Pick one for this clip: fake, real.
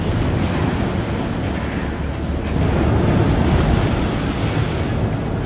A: real